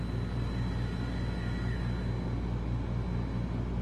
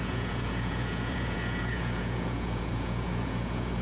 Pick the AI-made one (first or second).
second